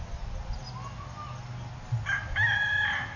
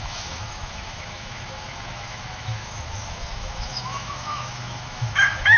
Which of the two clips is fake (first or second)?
second